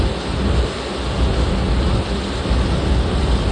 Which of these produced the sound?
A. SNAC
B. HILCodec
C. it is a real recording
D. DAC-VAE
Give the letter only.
C